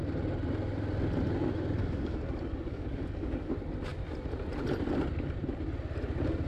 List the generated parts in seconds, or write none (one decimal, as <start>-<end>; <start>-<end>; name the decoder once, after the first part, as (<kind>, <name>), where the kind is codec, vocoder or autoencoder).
1.8-3.5 (codec, DAC)

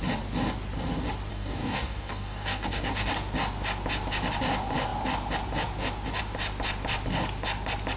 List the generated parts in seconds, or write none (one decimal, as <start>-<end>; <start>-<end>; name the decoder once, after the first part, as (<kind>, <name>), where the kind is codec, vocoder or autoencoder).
1.3-3.1 (codec, DAC)

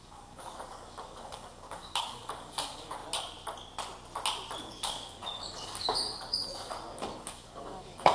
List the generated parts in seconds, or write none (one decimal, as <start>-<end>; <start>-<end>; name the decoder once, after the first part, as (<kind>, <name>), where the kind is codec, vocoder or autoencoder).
0.0-3.0 (codec, DAC); 4.6-8.1

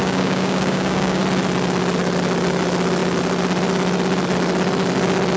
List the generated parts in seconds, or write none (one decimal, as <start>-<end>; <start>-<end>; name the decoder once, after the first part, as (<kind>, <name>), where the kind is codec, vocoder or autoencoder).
0.0-1.2 (codec, DAC)